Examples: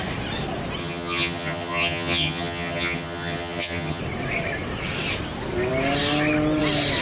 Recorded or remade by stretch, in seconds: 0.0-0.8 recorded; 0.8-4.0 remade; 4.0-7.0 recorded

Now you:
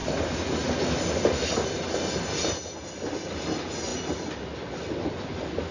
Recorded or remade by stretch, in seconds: 0.0-5.7 recorded

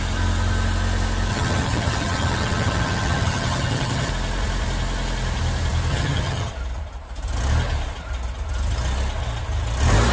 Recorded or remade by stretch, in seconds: 0.0-1.3 recorded; 1.3-4.1 remade; 4.1-5.9 recorded; 5.9-6.5 remade; 6.5-10.1 recorded

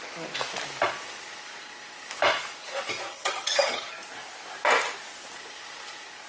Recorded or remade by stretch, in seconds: 0.0-3.1 recorded; 3.1-3.9 remade; 3.9-6.3 recorded